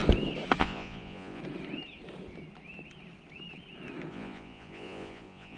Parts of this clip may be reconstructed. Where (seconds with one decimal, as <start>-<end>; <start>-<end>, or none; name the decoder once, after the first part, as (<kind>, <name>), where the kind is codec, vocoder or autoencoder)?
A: 0.6-1.4 (vocoder, Vocos); 4.1-5.6